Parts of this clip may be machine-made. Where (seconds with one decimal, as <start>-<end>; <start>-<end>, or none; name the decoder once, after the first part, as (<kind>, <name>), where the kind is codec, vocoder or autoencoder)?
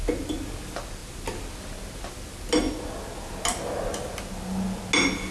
none